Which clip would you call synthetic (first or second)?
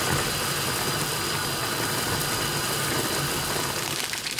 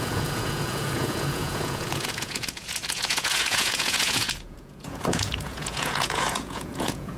second